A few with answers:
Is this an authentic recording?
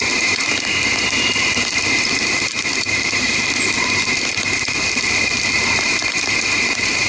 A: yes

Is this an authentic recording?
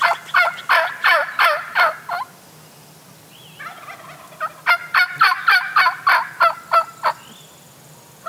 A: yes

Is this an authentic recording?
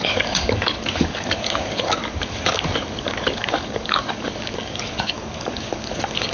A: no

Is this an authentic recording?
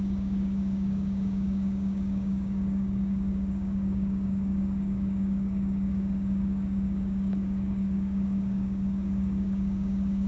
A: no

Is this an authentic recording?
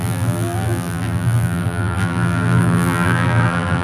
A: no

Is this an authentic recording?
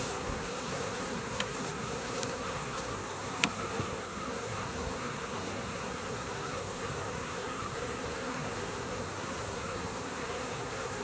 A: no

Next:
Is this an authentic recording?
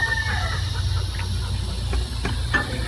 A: yes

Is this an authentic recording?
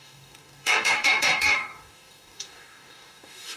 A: no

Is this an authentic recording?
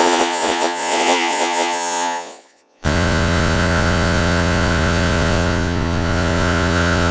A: no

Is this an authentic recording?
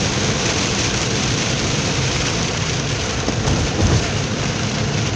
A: no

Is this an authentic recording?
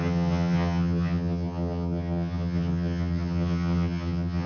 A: no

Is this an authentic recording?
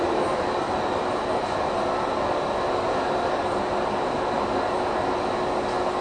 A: yes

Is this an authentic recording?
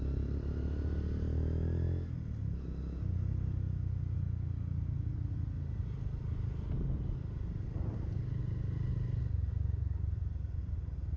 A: yes